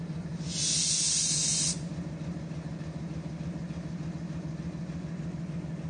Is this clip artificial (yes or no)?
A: no